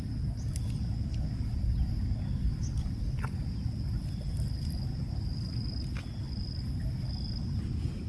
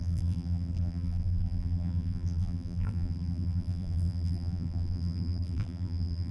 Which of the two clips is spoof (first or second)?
second